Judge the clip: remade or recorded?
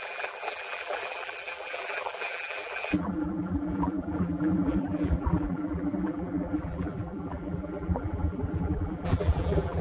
remade